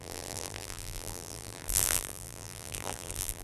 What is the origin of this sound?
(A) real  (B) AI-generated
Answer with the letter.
B